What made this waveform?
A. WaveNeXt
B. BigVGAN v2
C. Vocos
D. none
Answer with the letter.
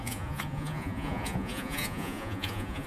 C